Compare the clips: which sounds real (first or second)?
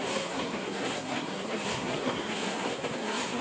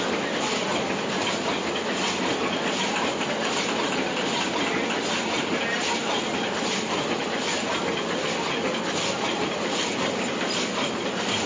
second